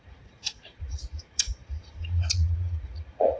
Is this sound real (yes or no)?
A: no